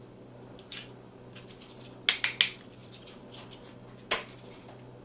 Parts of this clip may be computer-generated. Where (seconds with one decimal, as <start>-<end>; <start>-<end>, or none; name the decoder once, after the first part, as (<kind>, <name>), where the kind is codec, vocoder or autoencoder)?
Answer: 2.8-3.7 (vocoder, BigVGAN v2)